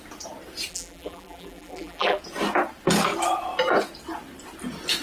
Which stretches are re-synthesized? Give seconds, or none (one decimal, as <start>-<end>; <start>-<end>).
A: 0.7-2.2

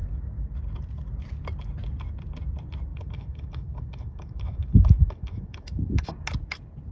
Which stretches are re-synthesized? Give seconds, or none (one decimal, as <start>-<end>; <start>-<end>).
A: 2.9-6.1